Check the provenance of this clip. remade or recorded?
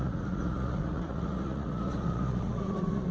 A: remade